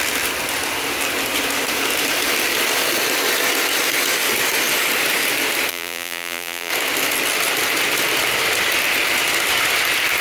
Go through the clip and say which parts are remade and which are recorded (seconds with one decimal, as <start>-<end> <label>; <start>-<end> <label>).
0.0-5.7 recorded; 5.7-6.7 remade; 6.7-10.2 recorded